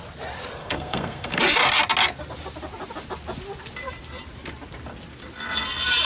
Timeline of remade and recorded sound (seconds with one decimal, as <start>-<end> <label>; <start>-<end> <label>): 0.0-0.6 recorded; 0.6-1.4 remade; 1.4-6.1 recorded